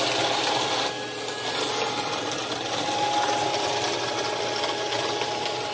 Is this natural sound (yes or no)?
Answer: yes